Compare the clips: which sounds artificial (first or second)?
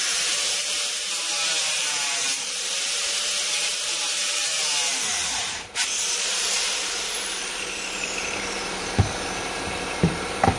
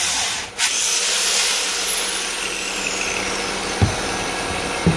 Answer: first